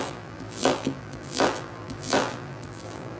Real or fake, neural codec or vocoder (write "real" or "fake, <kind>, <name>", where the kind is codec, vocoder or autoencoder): fake, vocoder, BigVGAN v2